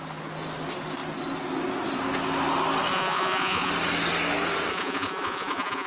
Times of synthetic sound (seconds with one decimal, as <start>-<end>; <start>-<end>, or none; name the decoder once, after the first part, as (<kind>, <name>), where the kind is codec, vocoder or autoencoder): 2.9-3.7 (vocoder, Vocos); 4.7-5.9